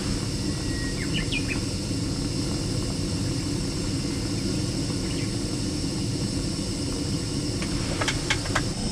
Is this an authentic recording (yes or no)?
yes